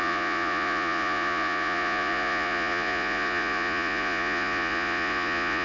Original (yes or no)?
no